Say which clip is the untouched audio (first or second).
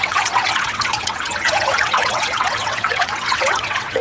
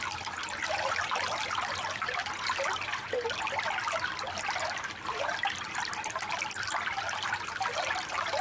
second